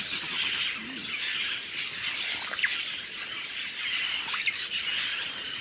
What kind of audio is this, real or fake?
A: real